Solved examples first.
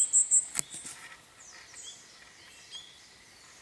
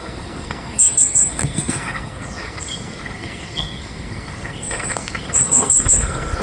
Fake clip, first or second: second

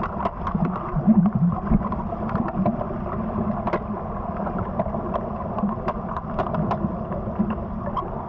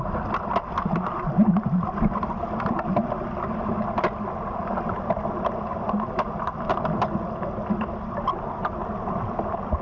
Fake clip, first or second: first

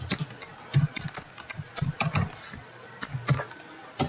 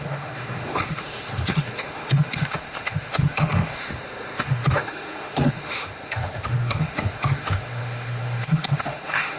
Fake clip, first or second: second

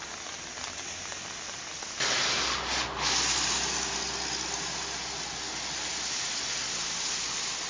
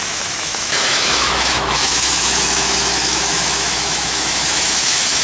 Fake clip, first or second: second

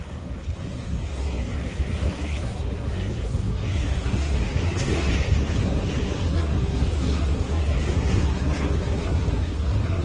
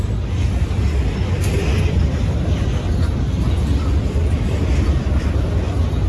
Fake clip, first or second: first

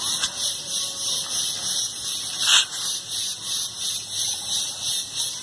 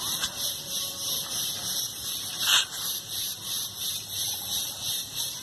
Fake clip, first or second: second